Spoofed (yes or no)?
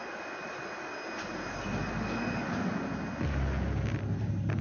no